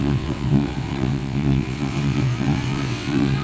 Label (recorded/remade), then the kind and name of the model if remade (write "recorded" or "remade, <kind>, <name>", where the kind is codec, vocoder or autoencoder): remade, vocoder, WaveNeXt